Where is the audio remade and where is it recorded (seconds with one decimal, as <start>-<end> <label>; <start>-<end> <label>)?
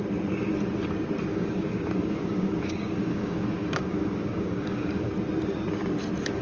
0.0-1.3 recorded; 1.3-5.1 remade; 5.1-6.4 recorded